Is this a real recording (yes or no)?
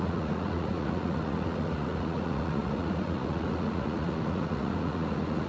no